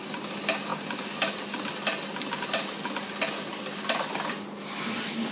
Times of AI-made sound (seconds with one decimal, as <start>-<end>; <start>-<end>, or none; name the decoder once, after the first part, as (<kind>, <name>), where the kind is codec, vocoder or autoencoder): none